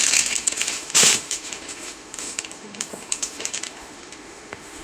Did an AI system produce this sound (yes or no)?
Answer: yes